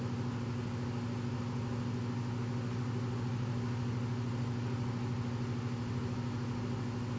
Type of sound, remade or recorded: recorded